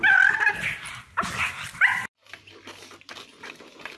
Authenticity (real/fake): real